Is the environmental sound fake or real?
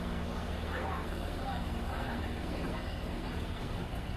fake